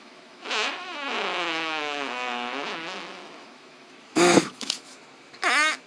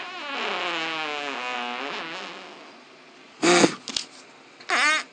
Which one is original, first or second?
second